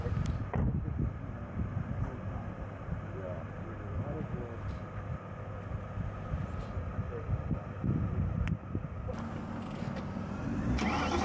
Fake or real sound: real